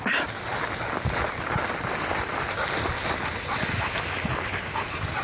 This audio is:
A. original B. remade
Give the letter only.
A